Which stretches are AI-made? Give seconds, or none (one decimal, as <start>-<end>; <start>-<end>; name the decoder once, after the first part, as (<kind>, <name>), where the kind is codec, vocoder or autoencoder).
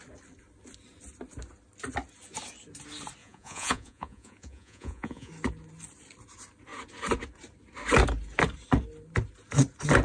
3.2-5.3 (vocoder, Vocos)